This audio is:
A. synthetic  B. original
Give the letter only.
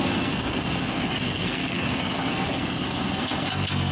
A